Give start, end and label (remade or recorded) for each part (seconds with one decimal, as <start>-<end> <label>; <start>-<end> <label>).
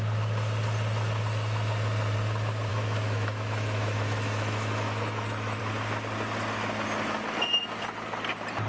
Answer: 0.0-2.7 recorded; 2.7-5.6 remade; 5.6-8.7 recorded